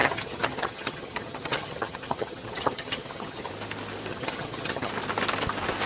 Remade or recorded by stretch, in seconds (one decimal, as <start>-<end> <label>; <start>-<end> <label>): 0.0-3.5 remade; 3.5-4.1 recorded; 4.1-4.9 remade; 4.9-5.9 recorded